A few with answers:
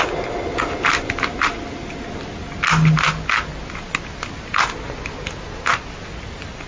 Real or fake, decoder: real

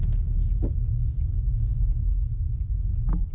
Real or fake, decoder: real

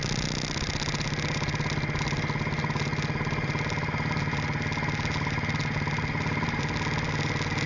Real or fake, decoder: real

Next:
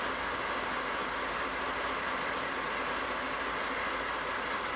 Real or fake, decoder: real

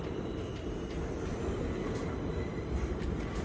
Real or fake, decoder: real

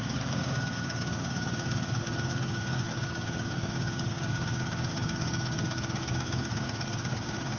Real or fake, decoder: fake, codec, DAC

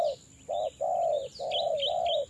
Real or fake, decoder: real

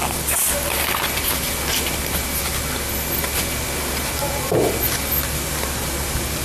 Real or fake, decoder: real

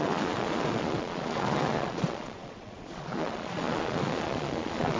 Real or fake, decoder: fake, vocoder, Vocos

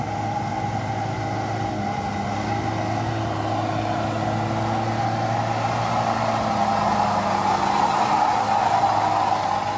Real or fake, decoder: real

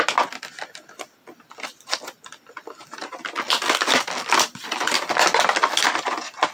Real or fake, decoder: real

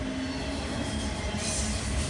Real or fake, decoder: real